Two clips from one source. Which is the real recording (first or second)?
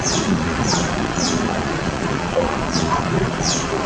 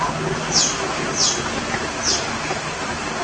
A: second